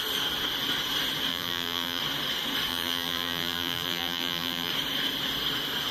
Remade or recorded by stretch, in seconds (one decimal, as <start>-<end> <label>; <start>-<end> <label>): 0.0-1.3 recorded; 1.3-2.0 remade; 2.0-2.7 recorded; 2.7-4.7 remade; 4.7-5.9 recorded